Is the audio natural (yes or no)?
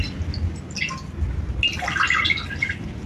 yes